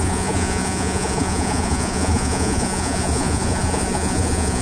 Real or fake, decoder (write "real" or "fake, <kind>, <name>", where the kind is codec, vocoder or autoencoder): fake, vocoder, Vocos